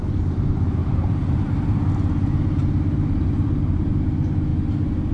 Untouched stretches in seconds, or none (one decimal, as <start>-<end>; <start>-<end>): 0.0-0.8; 3.9-5.1